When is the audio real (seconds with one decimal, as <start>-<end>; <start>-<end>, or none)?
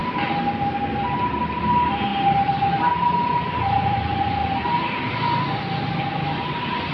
0.0-6.9